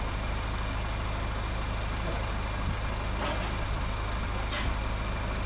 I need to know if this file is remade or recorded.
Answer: recorded